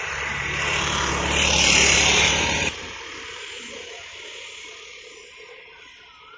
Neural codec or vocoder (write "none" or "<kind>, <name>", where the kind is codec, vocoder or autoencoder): vocoder, BigVGAN v2